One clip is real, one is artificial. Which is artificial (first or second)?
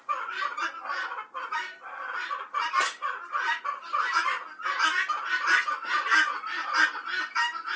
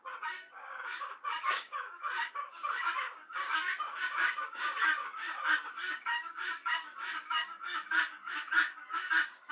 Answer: second